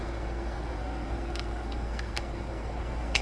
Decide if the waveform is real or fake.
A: fake